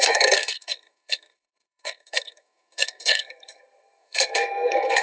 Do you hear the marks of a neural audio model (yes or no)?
yes